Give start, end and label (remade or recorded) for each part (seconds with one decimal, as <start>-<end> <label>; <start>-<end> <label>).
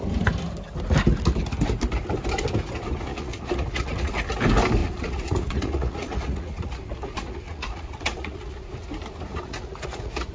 0.0-3.1 recorded; 3.1-4.1 remade; 4.1-4.8 recorded; 4.8-8.7 remade; 8.7-9.3 recorded; 9.3-10.3 remade